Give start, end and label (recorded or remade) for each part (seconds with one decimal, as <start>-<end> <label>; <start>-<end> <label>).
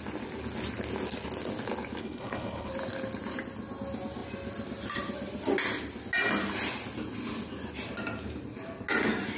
0.0-2.0 recorded; 2.0-2.7 remade; 2.7-9.4 recorded